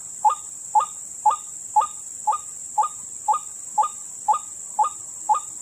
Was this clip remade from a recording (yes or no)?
no